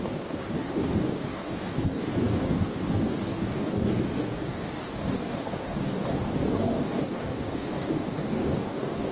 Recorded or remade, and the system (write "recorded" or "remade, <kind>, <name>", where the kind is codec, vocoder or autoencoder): remade, codec, DAC